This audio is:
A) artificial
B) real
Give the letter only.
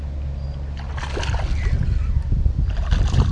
B